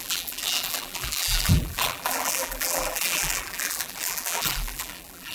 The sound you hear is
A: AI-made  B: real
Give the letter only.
A